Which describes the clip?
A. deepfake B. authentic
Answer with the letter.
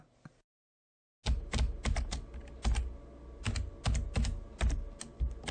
B